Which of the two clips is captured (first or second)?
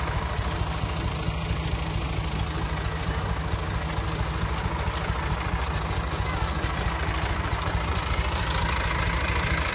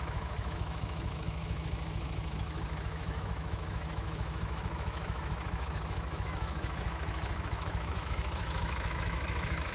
first